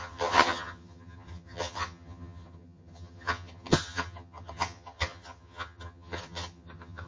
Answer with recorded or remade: remade